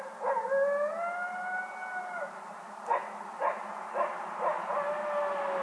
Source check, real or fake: real